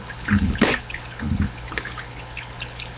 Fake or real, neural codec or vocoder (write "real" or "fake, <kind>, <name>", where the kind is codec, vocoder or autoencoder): fake, codec, HILCodec